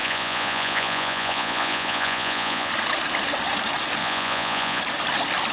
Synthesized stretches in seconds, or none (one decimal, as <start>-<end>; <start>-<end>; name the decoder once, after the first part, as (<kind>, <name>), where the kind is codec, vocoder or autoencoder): 0.0-2.7 (vocoder, Vocos); 4.0-4.8